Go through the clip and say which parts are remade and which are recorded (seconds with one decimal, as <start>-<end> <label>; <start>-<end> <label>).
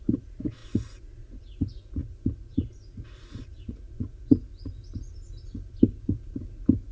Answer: 0.0-4.5 remade; 4.5-5.8 recorded; 5.8-6.9 remade